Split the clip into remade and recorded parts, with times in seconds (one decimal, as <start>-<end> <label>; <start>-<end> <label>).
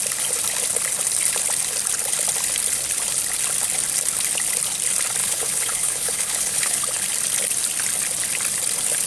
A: 0.0-5.2 recorded; 5.2-6.8 remade; 6.8-9.1 recorded